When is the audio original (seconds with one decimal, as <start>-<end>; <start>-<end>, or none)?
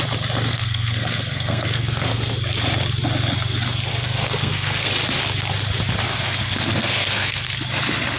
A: 0.0-0.5; 2.3-3.9; 4.9-6.1; 7.5-8.2